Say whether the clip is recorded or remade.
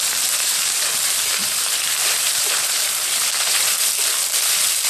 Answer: remade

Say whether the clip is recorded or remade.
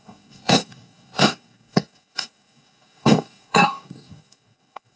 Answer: remade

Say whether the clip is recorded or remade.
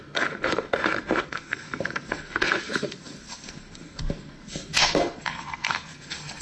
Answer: remade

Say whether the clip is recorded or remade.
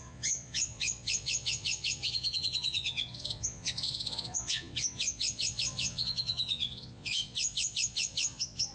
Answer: remade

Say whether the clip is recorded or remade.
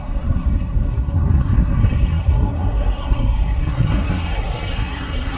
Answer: remade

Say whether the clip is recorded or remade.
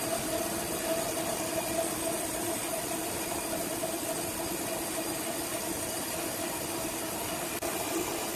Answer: recorded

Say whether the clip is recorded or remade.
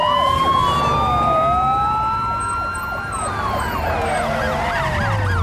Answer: recorded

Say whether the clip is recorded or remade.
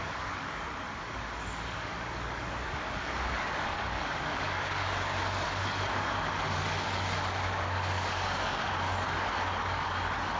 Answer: remade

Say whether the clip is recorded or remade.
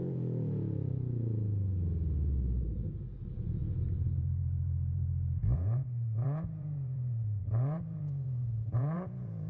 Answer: remade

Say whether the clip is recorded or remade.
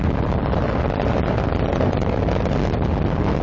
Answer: recorded